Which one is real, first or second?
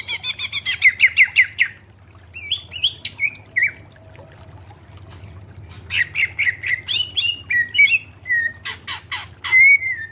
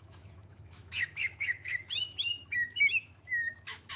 first